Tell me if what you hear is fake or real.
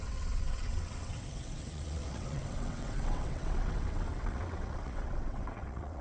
fake